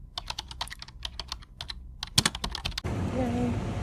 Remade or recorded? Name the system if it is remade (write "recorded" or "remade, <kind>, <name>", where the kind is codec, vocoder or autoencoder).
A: recorded